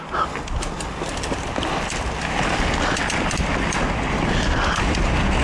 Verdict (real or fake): real